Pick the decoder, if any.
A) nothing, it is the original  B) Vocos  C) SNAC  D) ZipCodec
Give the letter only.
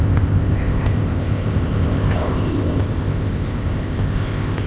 D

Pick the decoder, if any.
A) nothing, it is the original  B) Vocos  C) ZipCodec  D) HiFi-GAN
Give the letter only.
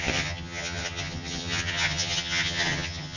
D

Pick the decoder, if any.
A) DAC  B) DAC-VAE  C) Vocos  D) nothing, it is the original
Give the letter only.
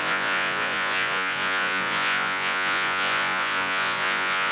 C